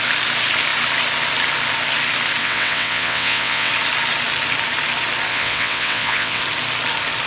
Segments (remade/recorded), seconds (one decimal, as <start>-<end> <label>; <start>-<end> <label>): 0.0-2.4 recorded; 2.4-3.7 remade; 3.7-5.3 recorded; 5.3-6.4 remade; 6.4-7.3 recorded